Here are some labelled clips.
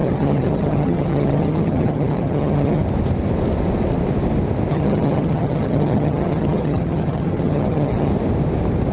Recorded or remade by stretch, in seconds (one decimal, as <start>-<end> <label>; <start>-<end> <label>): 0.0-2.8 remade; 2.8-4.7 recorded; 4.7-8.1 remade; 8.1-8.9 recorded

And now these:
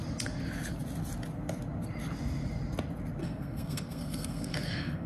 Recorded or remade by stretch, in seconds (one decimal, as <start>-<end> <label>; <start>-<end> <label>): 0.0-3.2 recorded; 3.2-5.1 remade

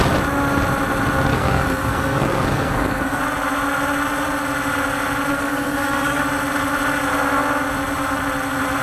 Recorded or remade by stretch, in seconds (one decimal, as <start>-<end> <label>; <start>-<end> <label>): 0.0-1.3 recorded; 1.3-3.2 remade; 3.2-5.3 recorded; 5.3-6.2 remade; 6.2-8.8 recorded